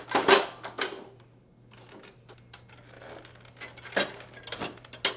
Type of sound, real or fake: real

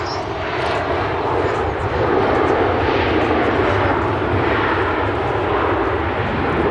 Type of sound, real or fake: real